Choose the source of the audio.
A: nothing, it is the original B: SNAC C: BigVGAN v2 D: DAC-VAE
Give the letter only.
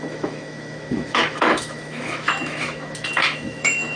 D